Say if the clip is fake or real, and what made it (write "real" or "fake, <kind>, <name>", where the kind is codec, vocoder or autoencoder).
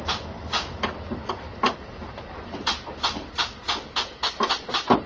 fake, vocoder, BigVGAN v2